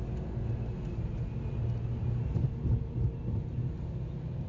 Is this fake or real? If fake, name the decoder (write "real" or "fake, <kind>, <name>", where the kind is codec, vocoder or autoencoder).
real